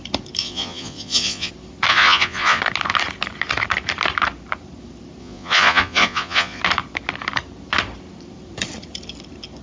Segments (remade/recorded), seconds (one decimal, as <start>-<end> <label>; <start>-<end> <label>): 0.0-0.4 recorded; 0.4-1.5 remade; 1.5-1.9 recorded; 1.9-2.6 remade; 2.6-5.2 recorded; 5.2-6.6 remade; 6.6-9.6 recorded